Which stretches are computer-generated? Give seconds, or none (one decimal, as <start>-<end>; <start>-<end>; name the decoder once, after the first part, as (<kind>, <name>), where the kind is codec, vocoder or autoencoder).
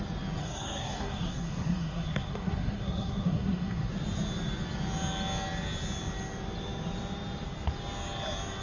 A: 0.4-3.9 (codec, SNAC)